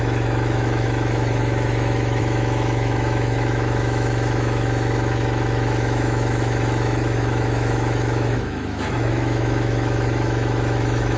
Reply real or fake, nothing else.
fake